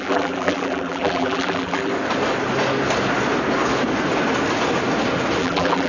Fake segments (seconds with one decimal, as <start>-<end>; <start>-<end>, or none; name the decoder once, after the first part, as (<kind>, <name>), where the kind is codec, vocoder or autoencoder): 0.0-1.9 (vocoder, BigVGAN v2); 5.4-5.9